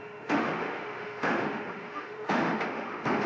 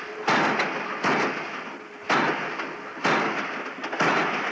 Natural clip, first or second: second